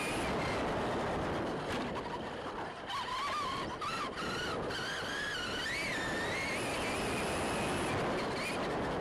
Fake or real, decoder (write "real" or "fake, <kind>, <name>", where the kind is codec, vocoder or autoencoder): real